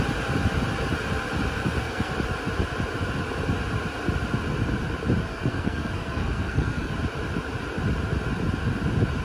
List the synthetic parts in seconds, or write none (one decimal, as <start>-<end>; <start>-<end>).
1.6-2.1; 5.3-6.9